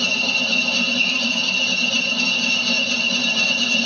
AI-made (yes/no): no